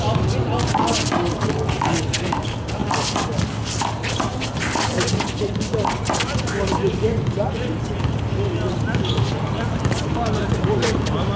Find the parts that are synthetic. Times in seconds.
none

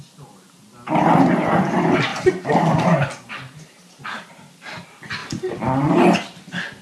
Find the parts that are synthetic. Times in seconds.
2.1-4.3 (vocoder, BigVGAN v2)

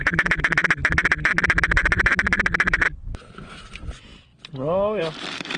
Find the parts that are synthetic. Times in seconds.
none